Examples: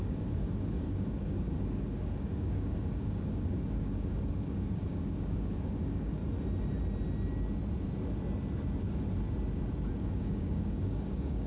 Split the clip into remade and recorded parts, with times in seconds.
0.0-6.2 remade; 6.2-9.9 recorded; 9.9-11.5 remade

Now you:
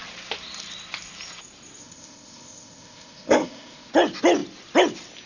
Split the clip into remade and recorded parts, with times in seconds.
0.0-1.8 recorded; 1.8-3.9 remade; 3.9-5.3 recorded

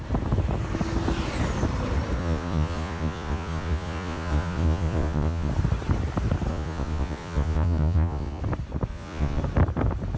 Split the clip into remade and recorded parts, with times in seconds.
0.0-2.2 recorded; 2.2-5.5 remade; 5.5-6.5 recorded; 6.5-8.4 remade; 8.4-8.9 recorded; 8.9-9.4 remade; 9.4-10.2 recorded

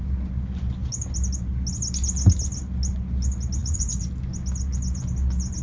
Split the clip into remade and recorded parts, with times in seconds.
0.0-3.6 recorded; 3.6-4.1 remade; 4.1-5.6 recorded

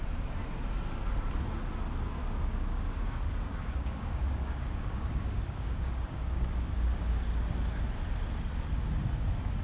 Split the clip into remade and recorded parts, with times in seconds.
0.0-2.2 recorded; 2.2-7.5 remade; 7.5-9.6 recorded

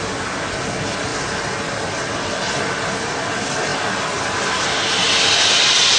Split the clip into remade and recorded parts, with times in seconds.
0.0-6.0 recorded

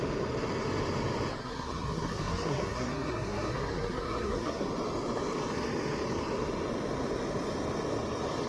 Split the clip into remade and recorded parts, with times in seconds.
0.0-1.4 recorded; 1.4-4.7 remade; 4.7-8.5 recorded

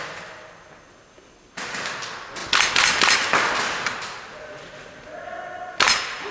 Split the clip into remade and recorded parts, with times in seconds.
0.0-6.3 recorded